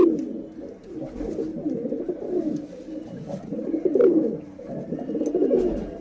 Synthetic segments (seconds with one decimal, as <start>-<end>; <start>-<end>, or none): 1.5-5.1